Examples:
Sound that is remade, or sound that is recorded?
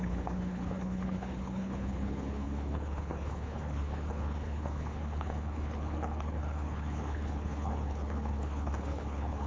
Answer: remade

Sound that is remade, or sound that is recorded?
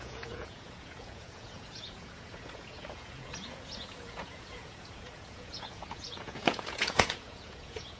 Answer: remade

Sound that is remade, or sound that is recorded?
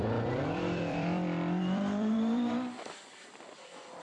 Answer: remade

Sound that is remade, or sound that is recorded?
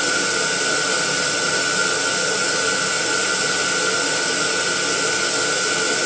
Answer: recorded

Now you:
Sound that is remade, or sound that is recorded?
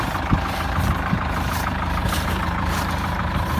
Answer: remade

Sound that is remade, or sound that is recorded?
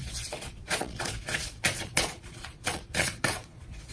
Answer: remade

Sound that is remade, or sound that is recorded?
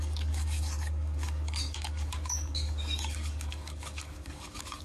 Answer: remade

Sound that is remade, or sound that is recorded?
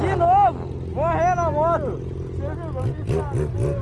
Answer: recorded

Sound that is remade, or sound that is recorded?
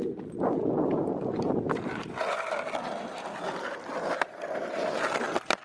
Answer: recorded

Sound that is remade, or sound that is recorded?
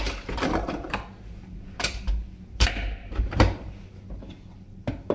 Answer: remade